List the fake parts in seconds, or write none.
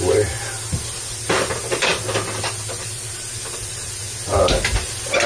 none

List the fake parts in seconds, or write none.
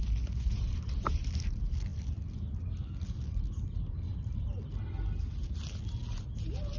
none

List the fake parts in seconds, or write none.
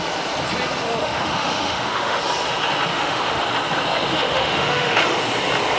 1.0-2.2; 2.9-3.4; 4.1-5.0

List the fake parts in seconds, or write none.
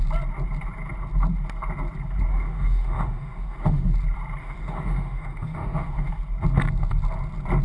2.3-3.9; 4.4-6.1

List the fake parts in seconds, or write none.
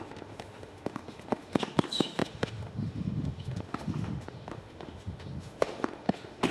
0.0-6.5